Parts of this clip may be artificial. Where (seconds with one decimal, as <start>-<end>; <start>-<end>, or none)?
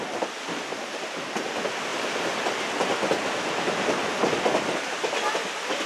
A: 0.7-1.5